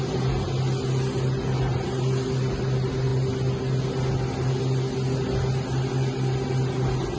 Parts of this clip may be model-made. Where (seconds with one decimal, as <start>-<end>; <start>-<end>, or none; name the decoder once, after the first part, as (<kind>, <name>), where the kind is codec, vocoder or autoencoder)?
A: none